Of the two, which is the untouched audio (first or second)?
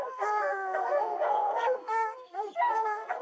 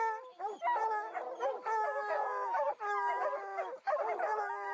second